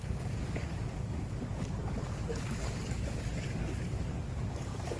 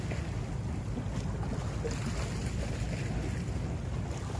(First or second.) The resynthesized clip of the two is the first